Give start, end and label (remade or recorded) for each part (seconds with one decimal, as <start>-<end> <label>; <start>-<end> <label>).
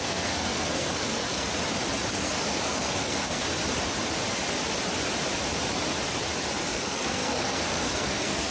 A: 0.0-1.5 remade; 1.5-2.1 recorded; 2.1-3.4 remade; 3.4-6.6 recorded; 6.6-8.5 remade